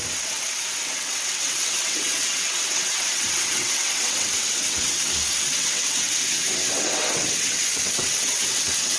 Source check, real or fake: fake